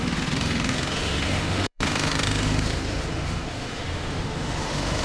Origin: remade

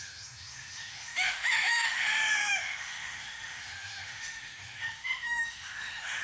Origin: remade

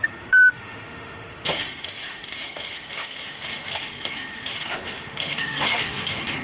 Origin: remade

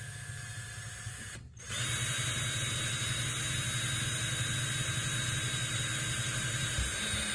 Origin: recorded